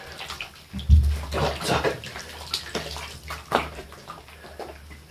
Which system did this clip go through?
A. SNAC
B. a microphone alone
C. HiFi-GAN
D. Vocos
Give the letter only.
B